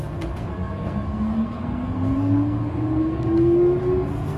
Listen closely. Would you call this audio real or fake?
fake